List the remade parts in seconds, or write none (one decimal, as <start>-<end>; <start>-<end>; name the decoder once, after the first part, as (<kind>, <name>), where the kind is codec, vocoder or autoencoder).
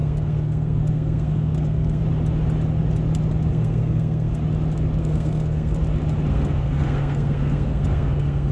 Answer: 0.0-2.0 (codec, SNAC); 3.5-4.4; 5.0-5.8; 6.3-8.5